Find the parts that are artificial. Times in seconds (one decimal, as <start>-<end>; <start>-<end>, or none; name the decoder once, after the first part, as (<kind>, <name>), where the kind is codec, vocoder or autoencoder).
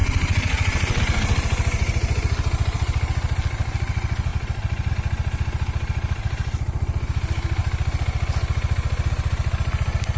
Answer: 0.0-1.0 (vocoder, Vocos)